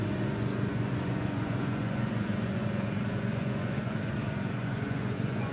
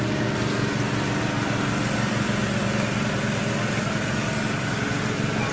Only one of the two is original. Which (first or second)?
second